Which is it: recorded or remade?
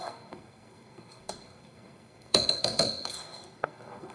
remade